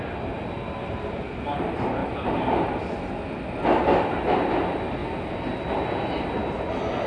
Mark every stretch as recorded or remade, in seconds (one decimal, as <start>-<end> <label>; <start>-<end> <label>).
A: 0.0-7.1 recorded